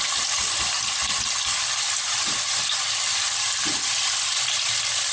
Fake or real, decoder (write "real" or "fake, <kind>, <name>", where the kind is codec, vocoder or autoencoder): real